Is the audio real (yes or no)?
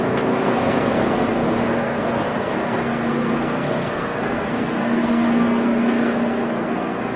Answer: no